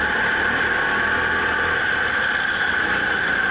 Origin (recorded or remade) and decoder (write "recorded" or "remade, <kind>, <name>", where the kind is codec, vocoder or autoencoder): recorded